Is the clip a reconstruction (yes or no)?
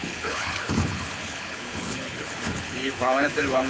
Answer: yes